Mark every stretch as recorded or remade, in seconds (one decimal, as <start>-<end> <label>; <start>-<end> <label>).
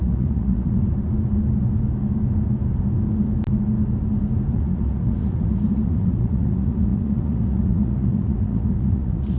0.0-0.8 remade; 0.8-4.5 recorded; 4.5-9.4 remade